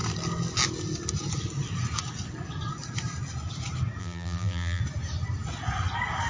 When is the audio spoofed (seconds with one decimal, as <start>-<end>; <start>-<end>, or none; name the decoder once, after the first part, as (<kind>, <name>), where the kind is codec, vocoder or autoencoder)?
4.0-4.8 (vocoder, BigVGAN v2)